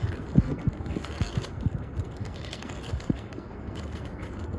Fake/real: fake